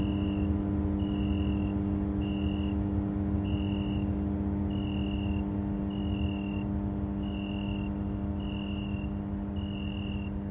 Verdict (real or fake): real